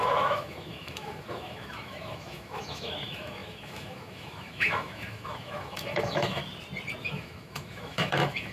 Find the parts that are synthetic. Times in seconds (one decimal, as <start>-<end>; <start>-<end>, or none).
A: 0.0-6.4; 7.0-8.5